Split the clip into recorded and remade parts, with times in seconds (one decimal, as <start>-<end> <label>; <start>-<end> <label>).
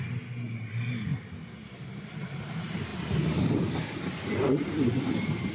0.0-5.5 recorded